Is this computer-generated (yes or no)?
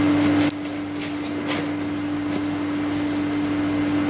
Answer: no